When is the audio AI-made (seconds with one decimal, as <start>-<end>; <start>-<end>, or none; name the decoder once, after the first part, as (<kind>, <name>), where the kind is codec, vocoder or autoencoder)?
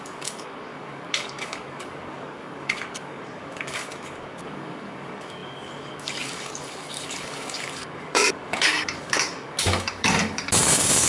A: 0.0-11.1 (codec, DAC)